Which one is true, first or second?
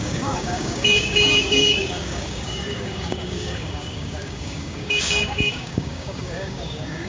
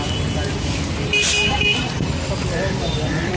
second